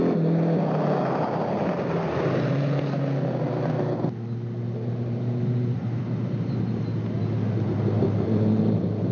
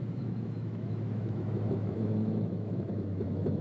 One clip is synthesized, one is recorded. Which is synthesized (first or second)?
second